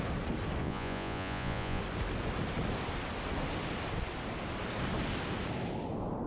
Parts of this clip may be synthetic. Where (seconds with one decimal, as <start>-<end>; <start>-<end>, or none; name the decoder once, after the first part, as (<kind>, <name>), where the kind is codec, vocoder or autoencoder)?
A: 0.6-1.8 (vocoder, Vocos)